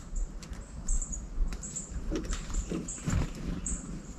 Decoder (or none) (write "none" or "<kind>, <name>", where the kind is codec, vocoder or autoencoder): vocoder, BigVGAN v2